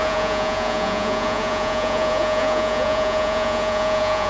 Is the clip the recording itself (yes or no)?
no